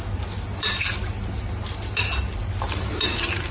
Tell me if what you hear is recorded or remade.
recorded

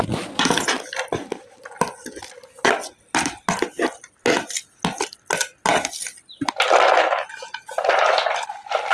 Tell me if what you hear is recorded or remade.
recorded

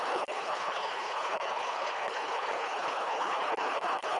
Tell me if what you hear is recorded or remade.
remade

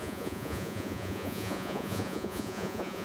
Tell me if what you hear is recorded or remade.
remade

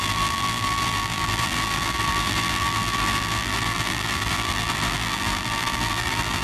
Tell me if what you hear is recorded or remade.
remade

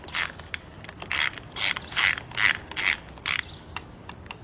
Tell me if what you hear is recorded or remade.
recorded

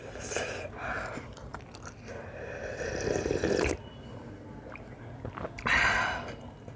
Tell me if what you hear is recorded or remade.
recorded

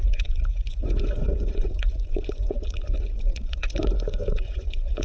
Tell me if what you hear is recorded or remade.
remade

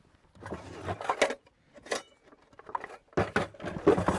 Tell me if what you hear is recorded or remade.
recorded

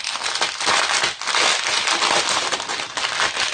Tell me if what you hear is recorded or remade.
recorded